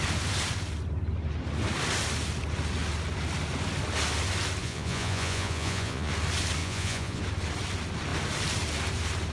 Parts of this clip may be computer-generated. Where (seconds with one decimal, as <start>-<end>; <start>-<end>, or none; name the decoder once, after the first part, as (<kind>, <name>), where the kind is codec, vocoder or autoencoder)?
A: 4.6-6.1 (vocoder, Vocos); 6.6-7.2